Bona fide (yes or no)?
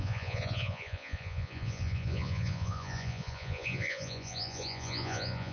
no